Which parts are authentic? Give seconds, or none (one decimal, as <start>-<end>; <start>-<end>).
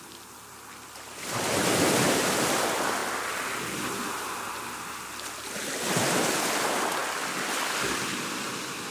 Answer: 0.0-8.9